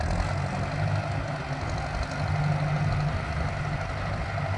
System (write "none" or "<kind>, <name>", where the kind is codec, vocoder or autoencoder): none